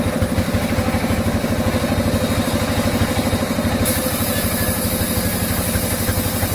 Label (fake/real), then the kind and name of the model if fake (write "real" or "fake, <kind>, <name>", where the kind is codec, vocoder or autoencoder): real